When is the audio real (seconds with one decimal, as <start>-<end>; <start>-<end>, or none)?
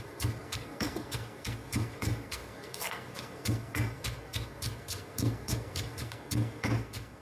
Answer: none